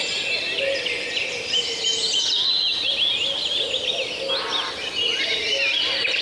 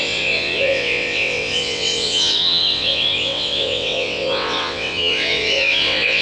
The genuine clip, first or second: first